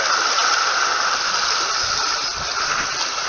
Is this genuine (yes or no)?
yes